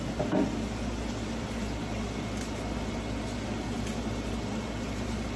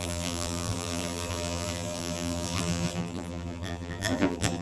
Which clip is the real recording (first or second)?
first